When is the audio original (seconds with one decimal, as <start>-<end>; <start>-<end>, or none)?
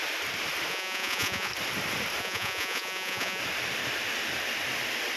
0.0-0.7; 1.5-2.2; 3.4-5.2